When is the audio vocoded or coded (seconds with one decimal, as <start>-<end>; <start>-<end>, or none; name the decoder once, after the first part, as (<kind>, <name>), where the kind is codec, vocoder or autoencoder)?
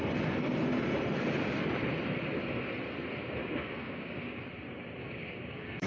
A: 3.4-4.4 (codec, DAC); 5.0-5.9